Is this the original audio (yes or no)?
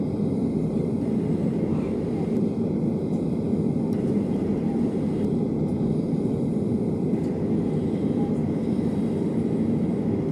yes